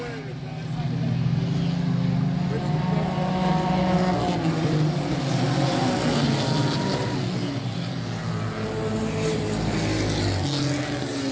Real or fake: real